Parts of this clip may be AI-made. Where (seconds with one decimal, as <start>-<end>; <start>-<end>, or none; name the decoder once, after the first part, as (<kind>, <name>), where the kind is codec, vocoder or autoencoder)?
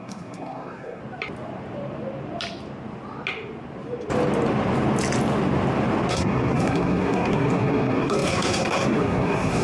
0.0-1.0 (codec, SNAC); 6.1-9.6